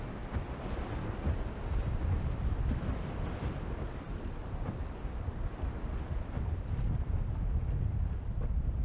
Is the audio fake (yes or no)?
no